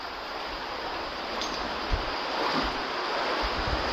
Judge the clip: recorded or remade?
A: recorded